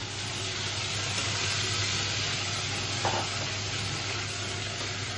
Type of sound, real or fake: real